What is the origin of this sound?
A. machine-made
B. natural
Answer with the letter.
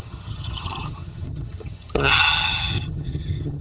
A